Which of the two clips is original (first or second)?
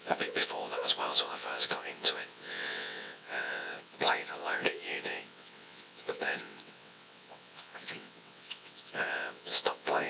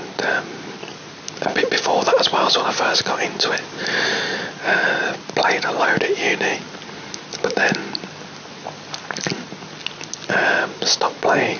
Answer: second